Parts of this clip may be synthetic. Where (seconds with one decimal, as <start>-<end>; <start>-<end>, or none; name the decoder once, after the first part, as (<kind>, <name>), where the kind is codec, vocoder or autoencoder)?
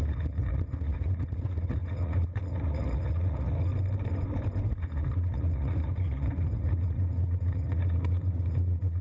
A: 0.0-3.7 (vocoder, Vocos); 4.8-9.0